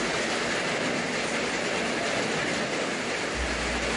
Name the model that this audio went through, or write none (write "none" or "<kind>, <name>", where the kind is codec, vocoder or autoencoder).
none